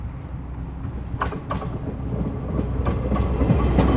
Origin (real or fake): real